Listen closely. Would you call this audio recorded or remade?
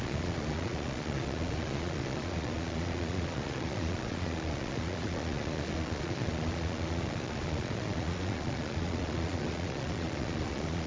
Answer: remade